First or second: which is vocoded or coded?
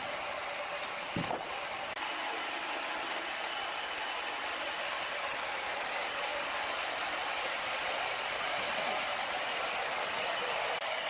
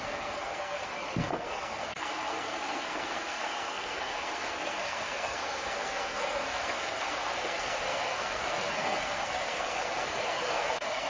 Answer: second